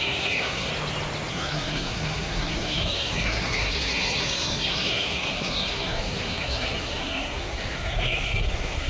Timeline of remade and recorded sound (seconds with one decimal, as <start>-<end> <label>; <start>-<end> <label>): 0.0-0.7 remade; 0.7-1.3 recorded; 1.3-8.9 remade